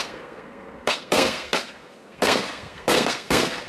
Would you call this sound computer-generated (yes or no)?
yes